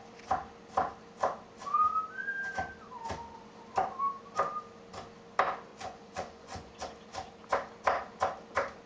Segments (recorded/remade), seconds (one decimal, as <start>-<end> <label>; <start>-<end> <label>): 0.0-5.7 recorded; 5.7-6.7 remade; 6.7-8.9 recorded